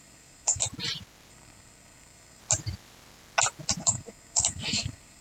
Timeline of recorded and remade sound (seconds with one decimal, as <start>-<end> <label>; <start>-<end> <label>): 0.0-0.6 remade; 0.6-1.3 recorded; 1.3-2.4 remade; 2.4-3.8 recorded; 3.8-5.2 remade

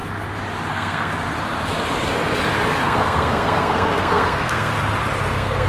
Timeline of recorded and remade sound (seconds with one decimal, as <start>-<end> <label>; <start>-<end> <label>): 0.0-0.7 recorded; 0.7-1.1 remade; 1.1-2.8 recorded; 2.8-4.7 remade; 4.7-5.3 recorded; 5.3-5.7 remade

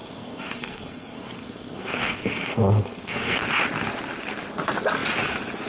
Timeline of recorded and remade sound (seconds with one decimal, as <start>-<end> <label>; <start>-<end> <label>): 0.0-3.4 remade; 3.4-5.7 recorded

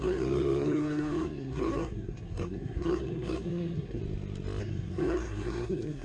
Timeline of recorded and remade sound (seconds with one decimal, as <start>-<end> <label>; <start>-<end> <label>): 0.0-4.0 remade; 4.0-4.6 recorded; 4.6-6.0 remade

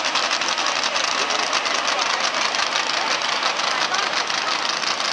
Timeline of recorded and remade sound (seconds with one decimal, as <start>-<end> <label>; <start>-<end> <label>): 0.0-5.1 recorded

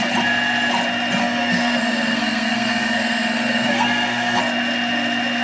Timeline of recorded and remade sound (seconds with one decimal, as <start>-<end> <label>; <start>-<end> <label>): 0.0-1.2 recorded; 1.2-4.4 remade; 4.4-5.4 recorded

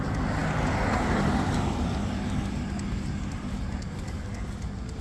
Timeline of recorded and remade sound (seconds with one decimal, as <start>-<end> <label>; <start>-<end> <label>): 0.0-5.0 recorded

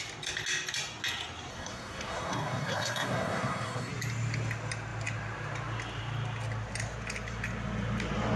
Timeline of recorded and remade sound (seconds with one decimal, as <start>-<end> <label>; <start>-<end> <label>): 0.0-1.5 recorded; 1.5-3.9 remade; 3.9-8.4 recorded